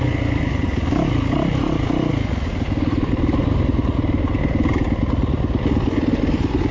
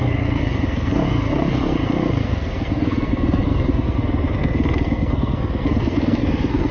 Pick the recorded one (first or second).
first